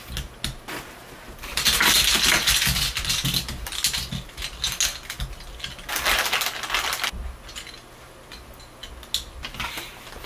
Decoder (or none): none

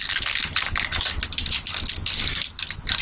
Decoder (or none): none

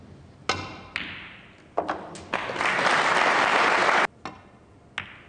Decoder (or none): none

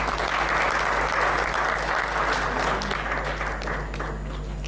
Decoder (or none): none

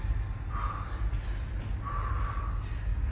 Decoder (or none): none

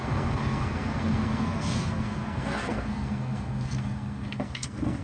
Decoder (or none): codec, SNAC